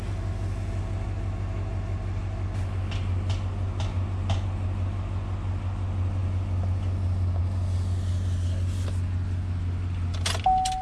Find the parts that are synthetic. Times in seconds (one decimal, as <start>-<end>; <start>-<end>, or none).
none